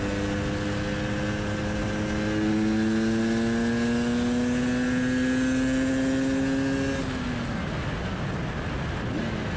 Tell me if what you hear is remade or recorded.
recorded